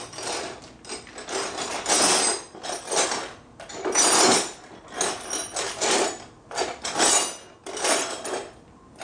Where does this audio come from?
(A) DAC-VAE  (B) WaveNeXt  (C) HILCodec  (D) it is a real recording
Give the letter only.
D